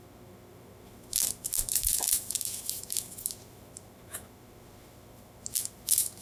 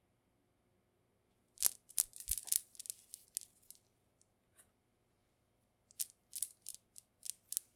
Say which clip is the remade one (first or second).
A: first